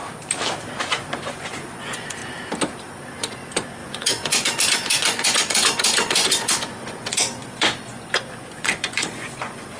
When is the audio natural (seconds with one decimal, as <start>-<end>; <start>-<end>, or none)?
0.0-0.8; 2.2-3.2